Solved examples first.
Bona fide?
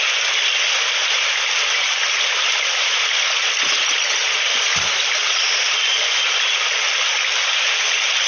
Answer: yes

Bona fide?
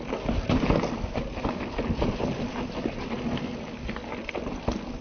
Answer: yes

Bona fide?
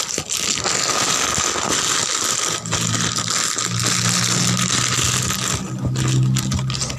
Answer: yes